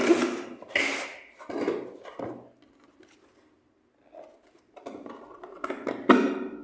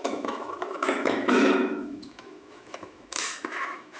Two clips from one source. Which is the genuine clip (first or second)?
first